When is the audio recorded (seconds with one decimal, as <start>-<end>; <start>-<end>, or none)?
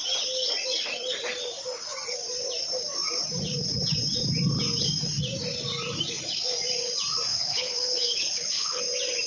0.0-7.3; 8.8-9.3